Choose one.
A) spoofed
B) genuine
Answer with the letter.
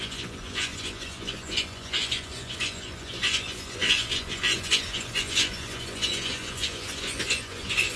A